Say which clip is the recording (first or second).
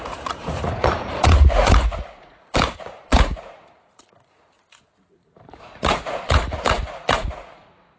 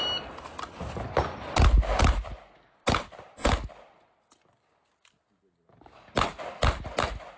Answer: second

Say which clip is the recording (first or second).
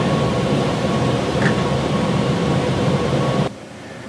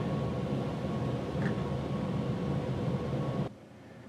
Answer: second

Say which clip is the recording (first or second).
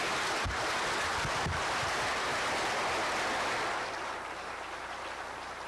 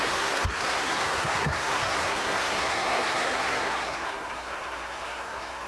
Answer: first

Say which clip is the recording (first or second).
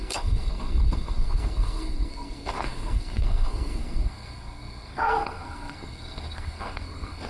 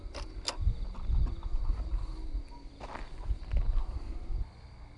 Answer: second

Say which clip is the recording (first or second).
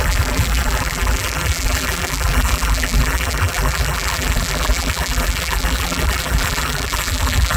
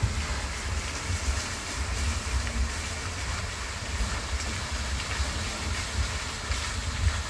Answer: second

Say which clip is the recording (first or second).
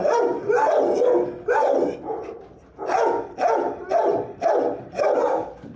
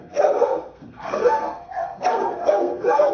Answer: first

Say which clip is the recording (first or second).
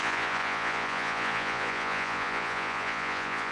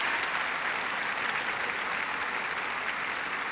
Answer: second